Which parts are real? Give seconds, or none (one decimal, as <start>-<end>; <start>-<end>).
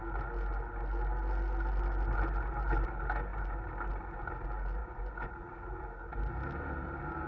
0.0-4.8; 5.3-7.3